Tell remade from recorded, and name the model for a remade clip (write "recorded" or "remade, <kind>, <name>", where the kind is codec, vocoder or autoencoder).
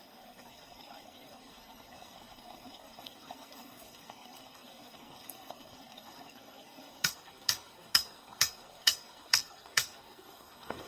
remade, codec, SNAC